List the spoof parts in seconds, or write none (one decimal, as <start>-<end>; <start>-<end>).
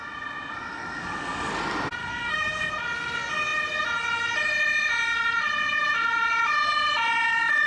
0.7-1.5; 2.0-2.7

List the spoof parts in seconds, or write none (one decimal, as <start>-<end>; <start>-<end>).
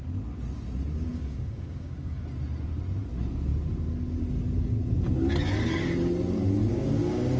1.1-2.2; 6.6-7.4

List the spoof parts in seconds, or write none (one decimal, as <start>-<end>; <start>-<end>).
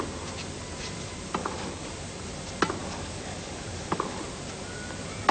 1.4-1.9; 2.8-4.2